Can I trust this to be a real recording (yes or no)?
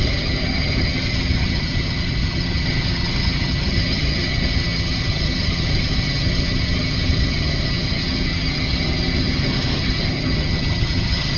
no